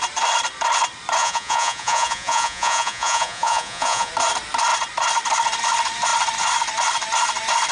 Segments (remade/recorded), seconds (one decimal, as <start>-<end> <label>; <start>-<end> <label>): 0.0-1.2 recorded; 1.2-4.1 remade; 4.1-7.7 recorded